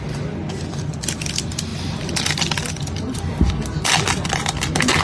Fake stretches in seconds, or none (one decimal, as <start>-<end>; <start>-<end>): none